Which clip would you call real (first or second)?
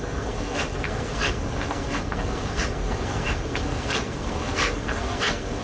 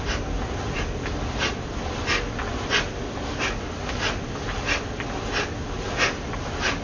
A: second